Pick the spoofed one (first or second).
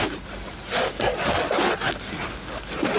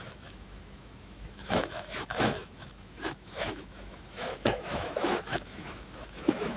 second